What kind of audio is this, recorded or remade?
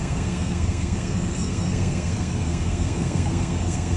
remade